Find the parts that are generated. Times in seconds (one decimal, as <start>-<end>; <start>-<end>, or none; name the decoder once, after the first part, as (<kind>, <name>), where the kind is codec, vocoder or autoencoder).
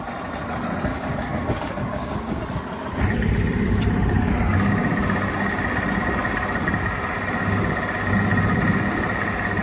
0.9-2.4 (codec, DAC)